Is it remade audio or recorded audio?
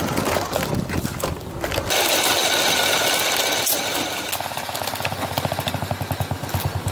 recorded